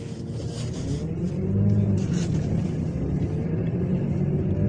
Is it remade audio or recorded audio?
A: recorded